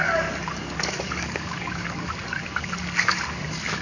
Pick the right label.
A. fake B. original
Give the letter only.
A